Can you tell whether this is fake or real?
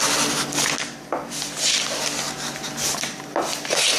real